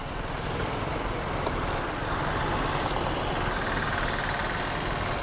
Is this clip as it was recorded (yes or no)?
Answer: yes